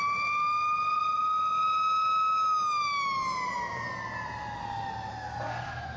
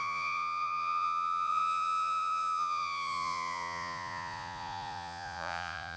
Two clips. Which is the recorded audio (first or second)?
first